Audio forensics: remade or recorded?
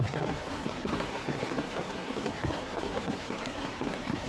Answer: remade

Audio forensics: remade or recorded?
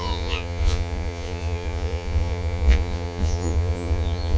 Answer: remade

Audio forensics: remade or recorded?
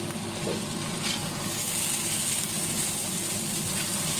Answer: recorded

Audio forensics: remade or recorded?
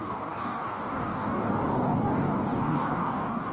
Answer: remade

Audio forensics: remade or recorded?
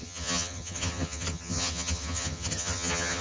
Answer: remade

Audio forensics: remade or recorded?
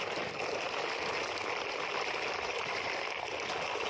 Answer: recorded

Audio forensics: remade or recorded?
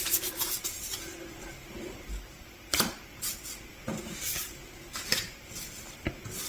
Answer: recorded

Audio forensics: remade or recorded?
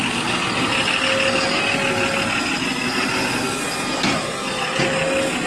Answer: recorded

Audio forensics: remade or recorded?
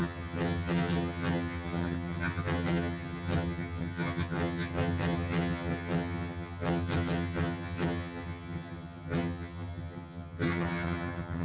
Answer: remade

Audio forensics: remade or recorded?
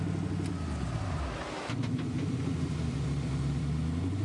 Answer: recorded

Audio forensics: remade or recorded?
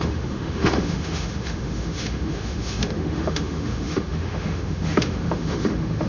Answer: remade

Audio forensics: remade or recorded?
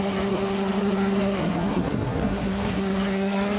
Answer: remade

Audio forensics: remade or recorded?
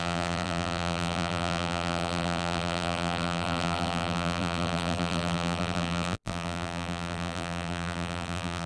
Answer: remade